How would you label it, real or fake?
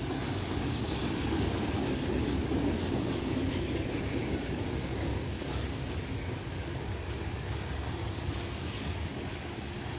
fake